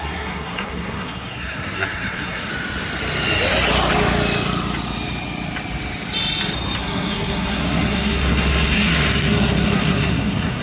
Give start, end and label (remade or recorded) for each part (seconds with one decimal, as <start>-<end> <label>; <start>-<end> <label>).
0.0-2.5 remade; 2.5-6.8 recorded; 6.8-10.6 remade